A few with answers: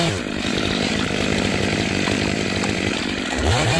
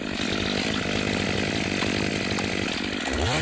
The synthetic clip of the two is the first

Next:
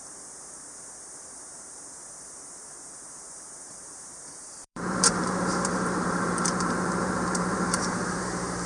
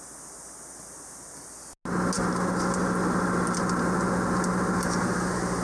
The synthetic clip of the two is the first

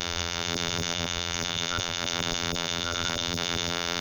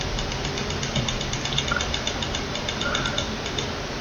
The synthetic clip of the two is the first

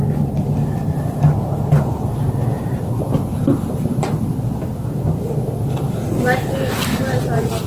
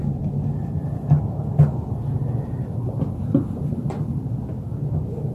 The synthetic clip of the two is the first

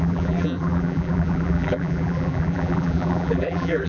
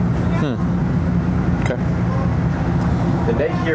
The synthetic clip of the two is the first